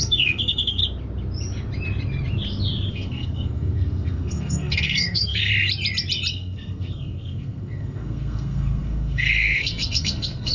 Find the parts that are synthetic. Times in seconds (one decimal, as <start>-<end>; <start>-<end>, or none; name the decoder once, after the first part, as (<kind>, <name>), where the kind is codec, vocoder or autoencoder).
0.0-0.8 (codec, SNAC); 2.9-5.5; 6.3-10.5

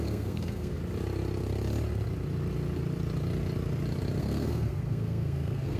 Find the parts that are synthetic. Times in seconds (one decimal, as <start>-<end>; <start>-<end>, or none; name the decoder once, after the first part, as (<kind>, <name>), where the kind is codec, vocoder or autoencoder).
0.0-0.8 (codec, SNAC); 4.2-5.8

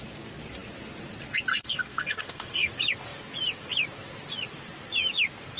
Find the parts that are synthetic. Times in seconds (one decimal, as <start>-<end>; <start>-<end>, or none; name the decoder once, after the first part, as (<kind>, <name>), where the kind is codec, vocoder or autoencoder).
1.5-2.7 (codec, SNAC)

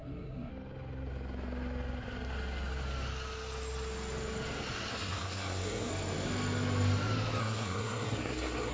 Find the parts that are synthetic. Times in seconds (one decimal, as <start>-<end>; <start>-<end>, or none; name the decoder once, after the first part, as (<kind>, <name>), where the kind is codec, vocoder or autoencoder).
0.0-0.5 (codec, SNAC); 4.9-5.9; 7.4-8.7

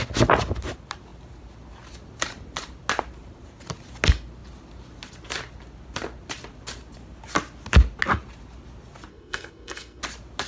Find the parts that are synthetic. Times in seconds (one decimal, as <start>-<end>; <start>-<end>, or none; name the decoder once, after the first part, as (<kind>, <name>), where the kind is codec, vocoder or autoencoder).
9.1-10.0 (codec, SNAC)